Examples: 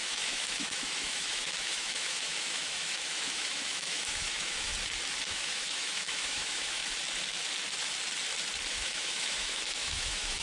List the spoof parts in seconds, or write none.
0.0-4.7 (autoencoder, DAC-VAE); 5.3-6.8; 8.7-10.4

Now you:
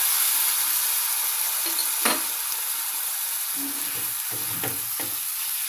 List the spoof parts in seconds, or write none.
none

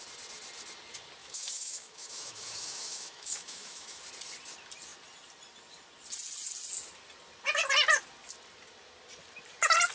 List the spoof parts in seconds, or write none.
1.2-4.0 (autoencoder, DAC-VAE)